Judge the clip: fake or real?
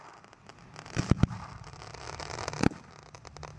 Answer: real